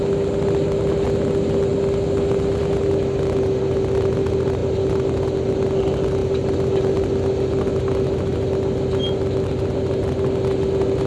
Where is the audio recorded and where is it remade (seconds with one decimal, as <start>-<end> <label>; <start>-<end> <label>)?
0.0-11.1 recorded